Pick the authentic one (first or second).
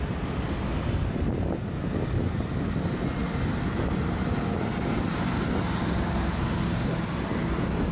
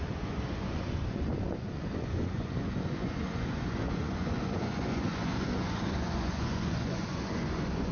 first